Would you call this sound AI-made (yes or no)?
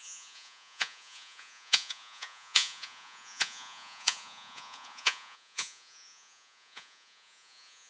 yes